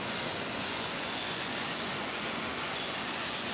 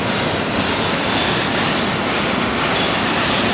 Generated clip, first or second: first